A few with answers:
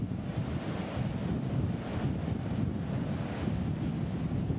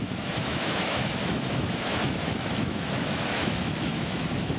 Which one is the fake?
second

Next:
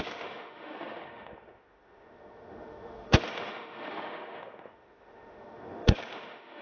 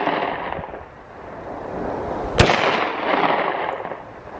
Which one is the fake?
first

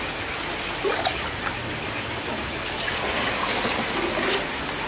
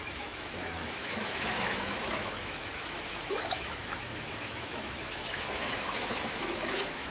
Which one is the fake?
second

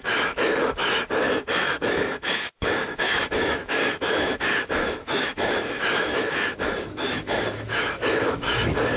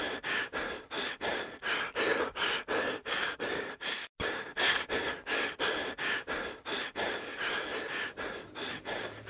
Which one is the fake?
first